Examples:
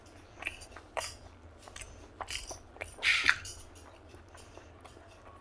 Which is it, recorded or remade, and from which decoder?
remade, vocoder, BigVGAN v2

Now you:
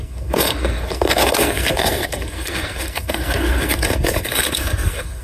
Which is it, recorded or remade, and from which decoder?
remade, codec, SNAC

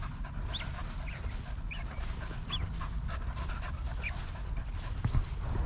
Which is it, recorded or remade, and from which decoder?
recorded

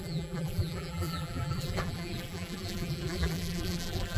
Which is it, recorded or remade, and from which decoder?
remade, vocoder, BigVGAN v2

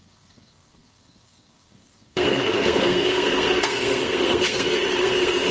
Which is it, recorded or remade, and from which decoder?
remade, codec, SNAC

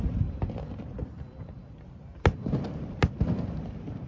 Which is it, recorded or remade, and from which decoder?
recorded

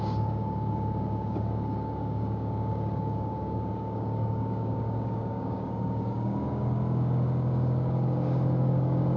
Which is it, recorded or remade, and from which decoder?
remade, codec, DAC